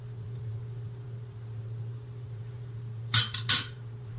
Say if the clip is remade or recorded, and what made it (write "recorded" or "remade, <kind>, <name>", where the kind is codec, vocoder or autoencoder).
remade, vocoder, BigVGAN v2